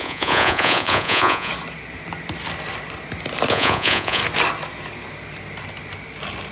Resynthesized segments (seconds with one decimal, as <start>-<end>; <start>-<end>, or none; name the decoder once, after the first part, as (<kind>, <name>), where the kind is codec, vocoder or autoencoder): 0.0-1.5 (vocoder, Vocos); 3.5-4.2